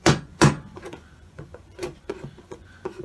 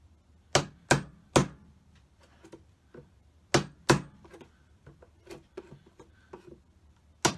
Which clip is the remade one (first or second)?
first